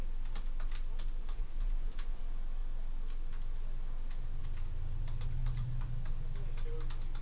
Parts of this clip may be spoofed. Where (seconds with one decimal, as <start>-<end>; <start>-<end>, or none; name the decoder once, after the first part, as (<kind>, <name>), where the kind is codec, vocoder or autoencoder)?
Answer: 1.2-2.2 (vocoder, Vocos); 5.4-5.9